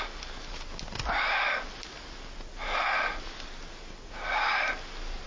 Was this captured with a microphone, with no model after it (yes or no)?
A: yes